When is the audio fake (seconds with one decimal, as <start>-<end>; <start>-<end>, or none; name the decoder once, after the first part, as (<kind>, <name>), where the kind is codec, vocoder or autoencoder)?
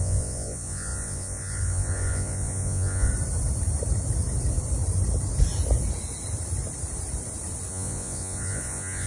0.0-3.1 (vocoder, Vocos); 7.7-9.1